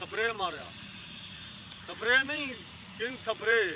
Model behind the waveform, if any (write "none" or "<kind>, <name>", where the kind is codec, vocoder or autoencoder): vocoder, Vocos